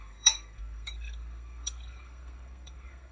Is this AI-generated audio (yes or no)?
yes